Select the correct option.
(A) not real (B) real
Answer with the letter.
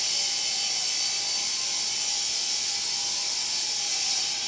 B